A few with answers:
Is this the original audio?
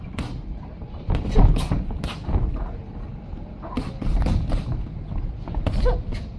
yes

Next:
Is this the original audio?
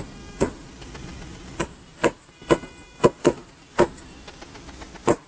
yes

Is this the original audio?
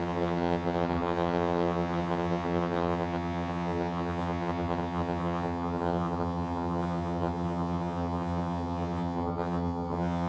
no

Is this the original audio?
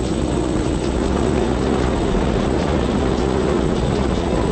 no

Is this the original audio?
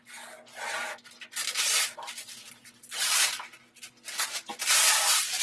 yes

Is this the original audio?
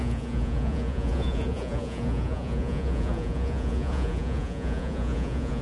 no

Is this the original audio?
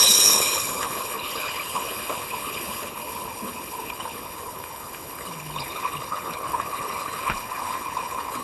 no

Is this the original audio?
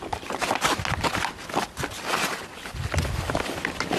yes